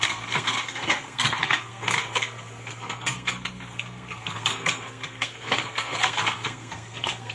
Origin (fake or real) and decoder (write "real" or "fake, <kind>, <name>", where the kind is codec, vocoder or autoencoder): fake, codec, SNAC